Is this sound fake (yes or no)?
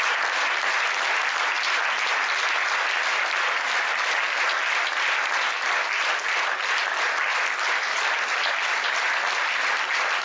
no